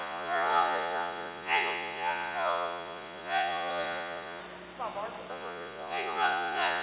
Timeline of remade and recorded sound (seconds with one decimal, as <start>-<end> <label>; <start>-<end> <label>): 0.0-4.4 remade; 4.4-5.3 recorded; 5.3-6.8 remade